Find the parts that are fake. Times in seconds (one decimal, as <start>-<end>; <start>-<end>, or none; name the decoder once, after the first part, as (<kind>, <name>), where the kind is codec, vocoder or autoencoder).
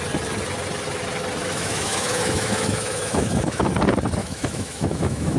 1.4-3.7 (autoencoder, DAC-VAE); 4.2-5.4